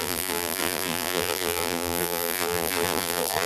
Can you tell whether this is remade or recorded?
remade